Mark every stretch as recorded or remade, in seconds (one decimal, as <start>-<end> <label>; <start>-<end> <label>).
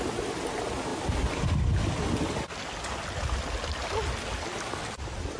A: 0.0-5.4 recorded